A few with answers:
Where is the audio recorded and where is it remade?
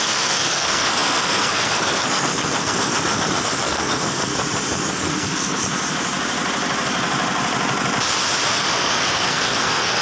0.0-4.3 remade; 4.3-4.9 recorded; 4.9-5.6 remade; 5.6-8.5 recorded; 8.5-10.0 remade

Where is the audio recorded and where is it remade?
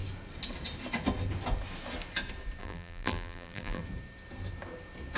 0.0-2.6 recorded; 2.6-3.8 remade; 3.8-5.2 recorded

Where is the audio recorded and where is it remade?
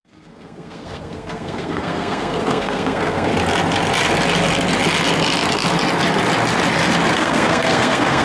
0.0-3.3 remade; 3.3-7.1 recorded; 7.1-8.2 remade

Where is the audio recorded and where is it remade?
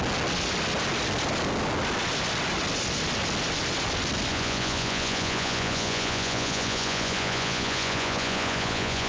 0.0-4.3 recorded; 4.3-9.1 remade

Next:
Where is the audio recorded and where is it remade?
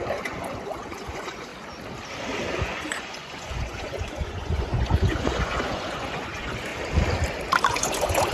0.0-1.5 remade; 1.5-2.6 recorded; 2.6-6.7 remade; 6.7-7.7 recorded; 7.7-8.3 remade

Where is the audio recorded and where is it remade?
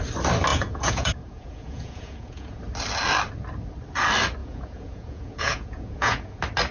0.0-0.5 recorded; 0.5-2.6 remade; 2.6-4.4 recorded; 4.4-6.3 remade; 6.3-6.7 recorded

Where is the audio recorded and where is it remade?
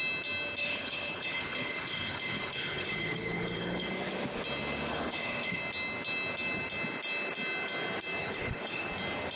0.0-0.6 recorded; 0.6-3.9 remade; 3.9-4.9 recorded; 4.9-5.6 remade; 5.6-8.2 recorded; 8.2-8.9 remade; 8.9-9.4 recorded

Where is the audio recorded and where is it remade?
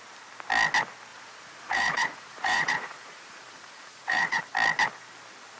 0.0-1.1 recorded; 1.1-4.4 remade; 4.4-5.6 recorded